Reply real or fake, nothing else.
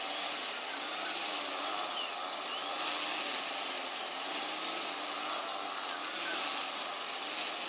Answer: real